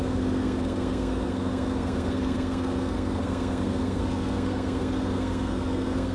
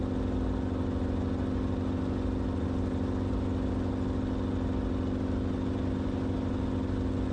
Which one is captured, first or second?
second